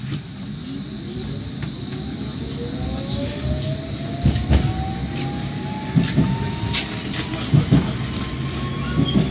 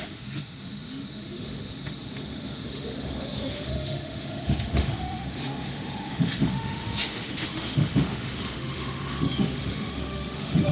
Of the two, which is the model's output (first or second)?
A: second